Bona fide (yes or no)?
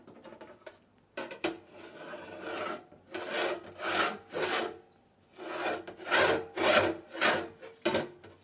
yes